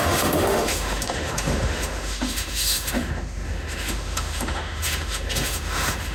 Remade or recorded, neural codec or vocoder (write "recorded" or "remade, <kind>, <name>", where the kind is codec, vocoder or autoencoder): remade, autoencoder, DAC-VAE